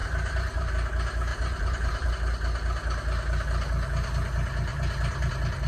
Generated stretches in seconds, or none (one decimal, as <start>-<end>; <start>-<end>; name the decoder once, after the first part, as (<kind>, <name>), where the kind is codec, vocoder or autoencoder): 0.0-0.7 (vocoder, BigVGAN v2); 1.3-2.1; 4.7-5.3